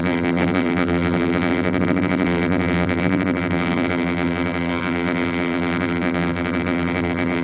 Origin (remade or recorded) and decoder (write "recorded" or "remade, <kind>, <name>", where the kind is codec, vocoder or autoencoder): remade, vocoder, BigVGAN v2